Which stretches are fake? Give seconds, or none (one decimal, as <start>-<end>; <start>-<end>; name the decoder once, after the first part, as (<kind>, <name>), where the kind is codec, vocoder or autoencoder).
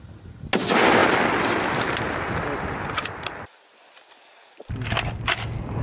none